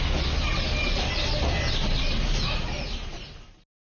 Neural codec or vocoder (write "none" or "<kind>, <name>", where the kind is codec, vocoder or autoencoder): none